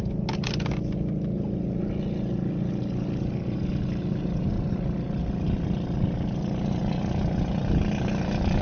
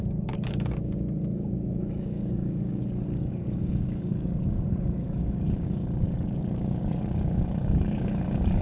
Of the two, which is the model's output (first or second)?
second